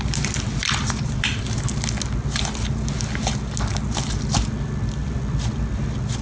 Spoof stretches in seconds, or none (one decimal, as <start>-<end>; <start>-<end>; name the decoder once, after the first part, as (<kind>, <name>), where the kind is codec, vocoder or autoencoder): 0.6-1.7 (vocoder, BigVGAN v2); 5.0-5.6